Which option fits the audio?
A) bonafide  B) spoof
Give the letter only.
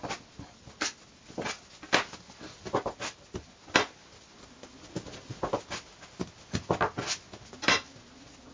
A